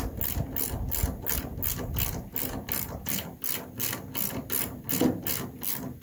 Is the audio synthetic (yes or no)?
no